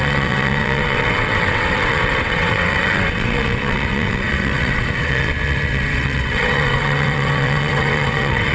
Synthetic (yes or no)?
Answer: yes